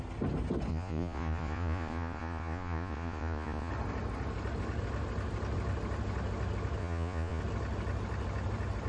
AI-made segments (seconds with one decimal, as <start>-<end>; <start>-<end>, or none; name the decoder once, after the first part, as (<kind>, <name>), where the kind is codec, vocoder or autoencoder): 0.7-3.7 (vocoder, Vocos); 6.8-7.4